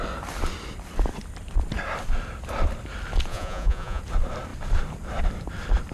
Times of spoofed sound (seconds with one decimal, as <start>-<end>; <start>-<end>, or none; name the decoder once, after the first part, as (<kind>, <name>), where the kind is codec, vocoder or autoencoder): 3.3-4.0 (vocoder, Vocos)